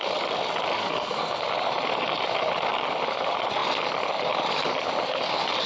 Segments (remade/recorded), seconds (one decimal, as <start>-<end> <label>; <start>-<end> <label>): 0.0-0.8 recorded; 0.8-1.4 remade; 1.4-5.7 recorded